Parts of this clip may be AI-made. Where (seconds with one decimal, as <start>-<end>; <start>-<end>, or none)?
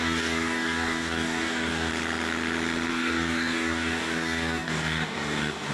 0.0-1.9; 2.9-5.7